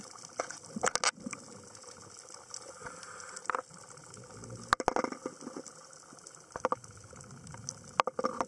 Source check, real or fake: real